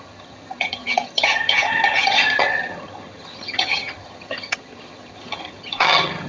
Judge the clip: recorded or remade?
remade